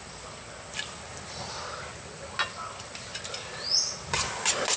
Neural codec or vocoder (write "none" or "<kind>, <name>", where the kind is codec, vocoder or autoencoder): none